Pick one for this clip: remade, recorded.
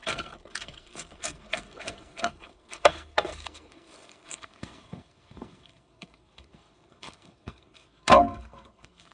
remade